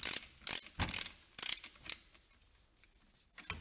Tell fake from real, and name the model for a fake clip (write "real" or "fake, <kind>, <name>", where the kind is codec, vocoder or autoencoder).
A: real